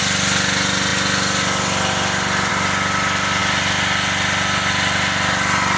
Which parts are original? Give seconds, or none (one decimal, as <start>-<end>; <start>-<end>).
0.0-5.8